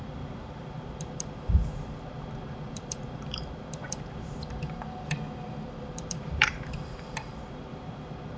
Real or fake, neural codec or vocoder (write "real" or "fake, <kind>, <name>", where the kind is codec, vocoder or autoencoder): fake, vocoder, BigVGAN v2